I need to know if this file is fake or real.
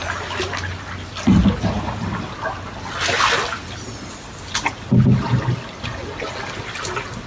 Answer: real